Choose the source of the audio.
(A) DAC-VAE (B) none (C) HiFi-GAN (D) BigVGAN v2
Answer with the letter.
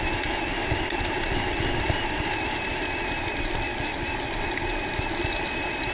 B